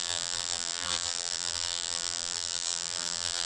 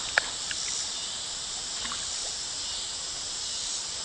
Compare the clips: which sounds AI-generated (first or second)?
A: first